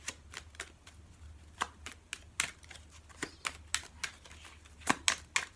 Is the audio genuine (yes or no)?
yes